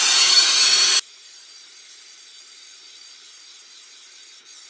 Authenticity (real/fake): real